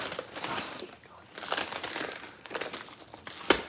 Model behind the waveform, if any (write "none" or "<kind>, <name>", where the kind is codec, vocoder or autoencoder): none